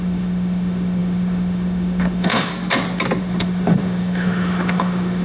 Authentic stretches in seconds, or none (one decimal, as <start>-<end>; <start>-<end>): 2.5-3.2